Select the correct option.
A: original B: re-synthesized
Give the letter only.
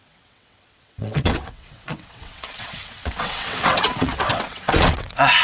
B